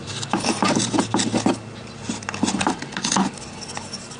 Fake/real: real